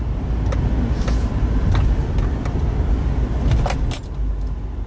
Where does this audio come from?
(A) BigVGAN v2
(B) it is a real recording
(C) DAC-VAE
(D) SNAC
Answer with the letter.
B